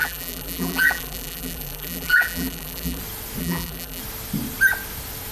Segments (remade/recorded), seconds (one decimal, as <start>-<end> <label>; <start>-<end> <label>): 0.0-3.0 remade; 3.0-3.4 recorded; 3.4-4.0 remade; 4.0-5.3 recorded